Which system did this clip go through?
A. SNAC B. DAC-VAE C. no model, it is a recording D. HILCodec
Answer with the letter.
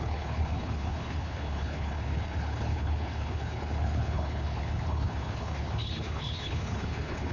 D